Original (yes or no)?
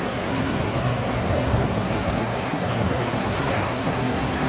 no